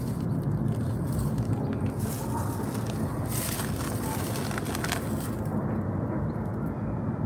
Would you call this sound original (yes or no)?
yes